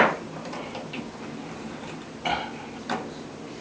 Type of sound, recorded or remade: recorded